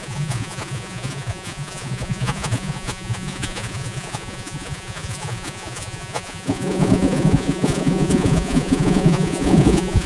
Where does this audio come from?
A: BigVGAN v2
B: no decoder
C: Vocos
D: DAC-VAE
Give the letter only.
C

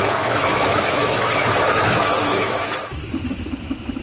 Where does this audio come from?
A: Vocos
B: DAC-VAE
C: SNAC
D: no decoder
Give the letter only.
B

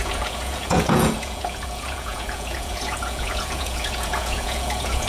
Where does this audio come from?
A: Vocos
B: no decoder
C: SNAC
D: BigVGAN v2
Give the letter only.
A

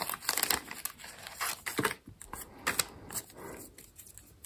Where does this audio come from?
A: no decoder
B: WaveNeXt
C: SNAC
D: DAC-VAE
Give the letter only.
A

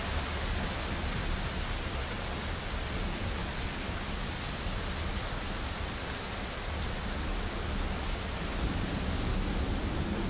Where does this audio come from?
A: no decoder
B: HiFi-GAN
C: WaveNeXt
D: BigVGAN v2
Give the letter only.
A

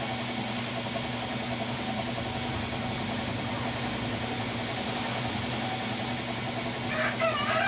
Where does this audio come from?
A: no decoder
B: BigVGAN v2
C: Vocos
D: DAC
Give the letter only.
A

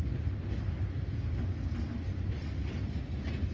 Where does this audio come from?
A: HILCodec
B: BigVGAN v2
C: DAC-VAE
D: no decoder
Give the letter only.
D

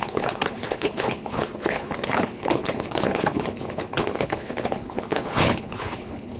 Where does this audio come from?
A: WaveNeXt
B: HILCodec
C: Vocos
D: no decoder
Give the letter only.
B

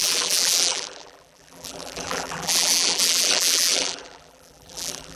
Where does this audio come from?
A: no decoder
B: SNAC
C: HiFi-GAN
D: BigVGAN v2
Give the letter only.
D